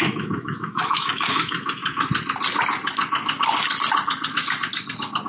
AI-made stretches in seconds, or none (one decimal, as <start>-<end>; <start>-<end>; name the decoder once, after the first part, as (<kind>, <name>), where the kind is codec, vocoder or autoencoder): 0.0-1.8 (autoencoder, DAC-VAE)